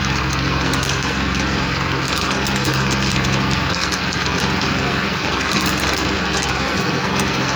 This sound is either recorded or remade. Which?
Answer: remade